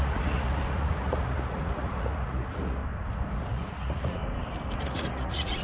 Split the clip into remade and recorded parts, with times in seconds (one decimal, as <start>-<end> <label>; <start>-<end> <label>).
0.0-2.8 remade; 2.8-3.3 recorded; 3.3-4.2 remade; 4.2-4.8 recorded; 4.8-5.6 remade